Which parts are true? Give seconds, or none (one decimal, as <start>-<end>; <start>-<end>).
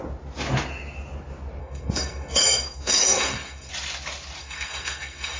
0.0-1.6; 3.7-4.4